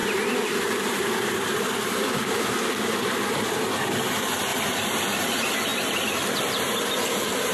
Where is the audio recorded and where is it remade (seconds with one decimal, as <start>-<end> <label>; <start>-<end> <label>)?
0.0-2.7 remade; 2.7-4.5 recorded; 4.5-5.3 remade; 5.3-5.7 recorded; 5.7-6.4 remade; 6.4-7.5 recorded